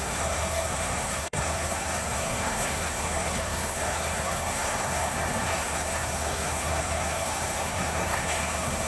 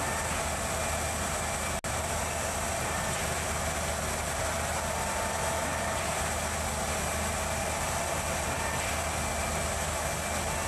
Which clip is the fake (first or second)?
first